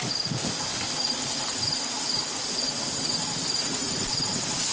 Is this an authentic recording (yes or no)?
yes